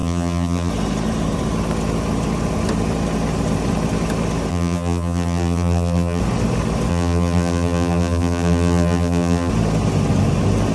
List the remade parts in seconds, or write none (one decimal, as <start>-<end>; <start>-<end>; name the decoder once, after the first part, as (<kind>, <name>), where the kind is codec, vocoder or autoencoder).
0.0-0.7 (vocoder, BigVGAN v2); 4.5-6.2; 6.9-9.5